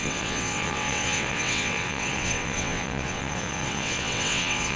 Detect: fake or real fake